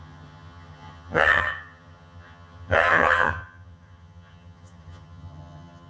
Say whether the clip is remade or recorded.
remade